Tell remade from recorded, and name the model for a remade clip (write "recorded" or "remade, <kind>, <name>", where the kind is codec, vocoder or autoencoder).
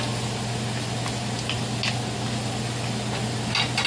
recorded